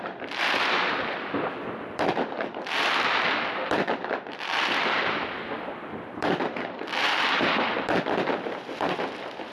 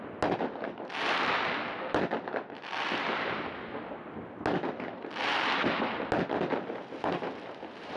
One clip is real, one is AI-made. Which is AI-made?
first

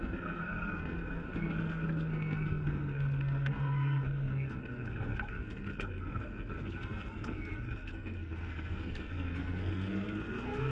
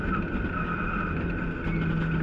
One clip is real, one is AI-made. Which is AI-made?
first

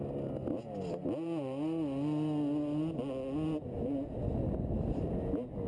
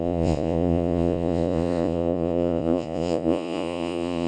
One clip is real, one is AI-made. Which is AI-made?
second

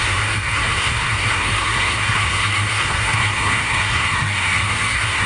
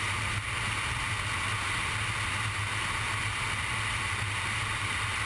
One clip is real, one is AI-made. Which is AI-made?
first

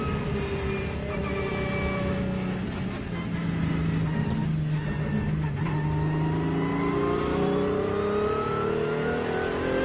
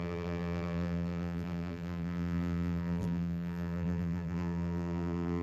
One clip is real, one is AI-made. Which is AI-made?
second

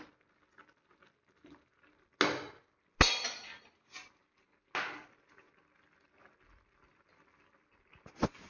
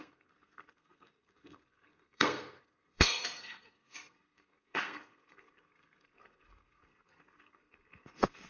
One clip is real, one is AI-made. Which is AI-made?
second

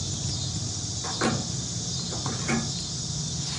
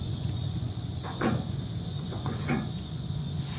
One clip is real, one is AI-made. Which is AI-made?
second